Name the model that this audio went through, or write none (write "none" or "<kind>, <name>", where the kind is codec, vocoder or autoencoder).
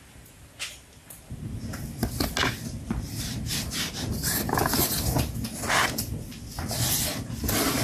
none